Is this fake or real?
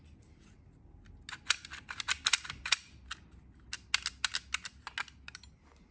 real